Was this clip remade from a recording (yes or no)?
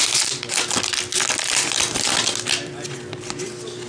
no